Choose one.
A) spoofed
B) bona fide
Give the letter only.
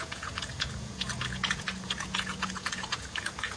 A